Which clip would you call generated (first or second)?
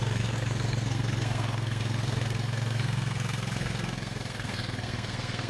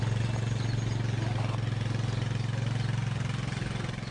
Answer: first